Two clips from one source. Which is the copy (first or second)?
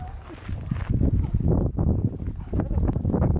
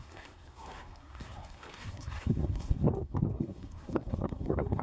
second